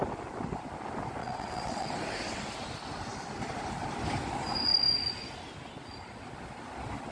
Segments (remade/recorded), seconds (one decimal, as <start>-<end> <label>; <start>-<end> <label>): 0.0-1.2 recorded; 1.2-1.9 remade; 1.9-7.1 recorded